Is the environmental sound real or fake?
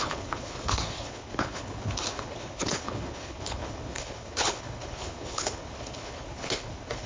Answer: fake